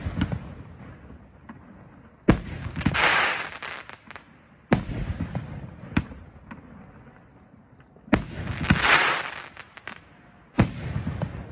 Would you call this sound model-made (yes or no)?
no